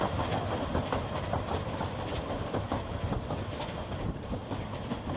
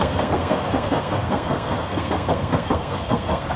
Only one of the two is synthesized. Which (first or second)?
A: second